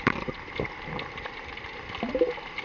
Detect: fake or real real